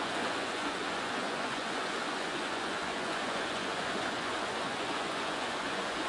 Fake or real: fake